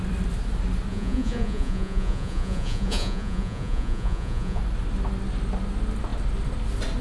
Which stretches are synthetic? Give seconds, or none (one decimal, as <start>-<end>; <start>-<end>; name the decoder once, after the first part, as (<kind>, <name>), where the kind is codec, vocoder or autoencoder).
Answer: 0.9-4.6 (vocoder, Vocos)